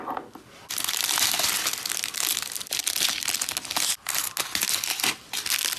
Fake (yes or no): no